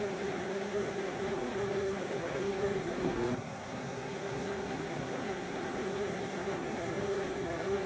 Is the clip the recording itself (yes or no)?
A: no